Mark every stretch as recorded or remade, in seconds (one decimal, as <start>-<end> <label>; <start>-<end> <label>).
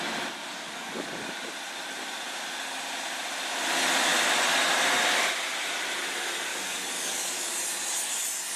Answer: 0.0-0.4 recorded; 0.4-1.1 remade; 1.1-6.5 recorded; 6.5-7.6 remade; 7.6-8.6 recorded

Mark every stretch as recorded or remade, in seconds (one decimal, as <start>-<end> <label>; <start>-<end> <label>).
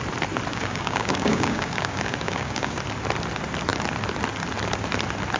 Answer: 0.0-0.5 recorded; 0.5-2.8 remade; 2.8-5.4 recorded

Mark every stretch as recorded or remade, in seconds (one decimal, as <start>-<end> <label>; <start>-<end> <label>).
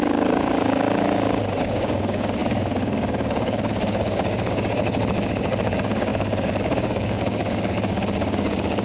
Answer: 0.0-8.8 remade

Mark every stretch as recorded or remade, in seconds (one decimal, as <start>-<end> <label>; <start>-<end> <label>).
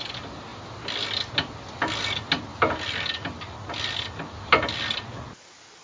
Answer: 0.0-5.8 recorded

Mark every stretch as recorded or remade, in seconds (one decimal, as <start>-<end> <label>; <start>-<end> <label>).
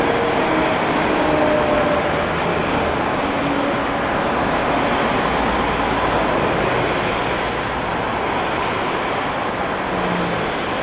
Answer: 0.0-2.5 recorded; 2.5-3.0 remade; 3.0-10.8 recorded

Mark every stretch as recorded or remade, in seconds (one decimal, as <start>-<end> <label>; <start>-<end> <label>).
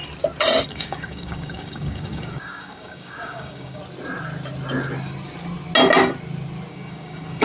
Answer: 0.0-0.7 recorded; 0.7-3.8 remade; 3.8-6.7 recorded; 6.7-7.4 remade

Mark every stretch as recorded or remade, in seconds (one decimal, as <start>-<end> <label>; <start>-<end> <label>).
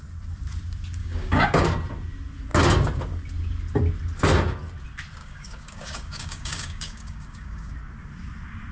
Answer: 0.0-1.0 recorded; 1.0-1.6 remade; 1.6-5.2 recorded; 5.2-7.7 remade; 7.7-8.7 recorded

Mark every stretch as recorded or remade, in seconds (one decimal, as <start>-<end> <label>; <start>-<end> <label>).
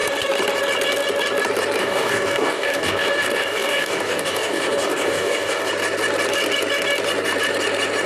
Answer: 0.0-1.8 recorded; 1.8-5.7 remade; 5.7-8.1 recorded